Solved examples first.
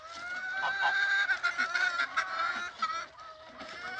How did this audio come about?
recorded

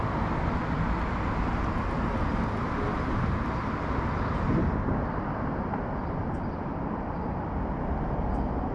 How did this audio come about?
recorded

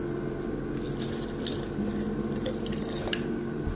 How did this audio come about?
recorded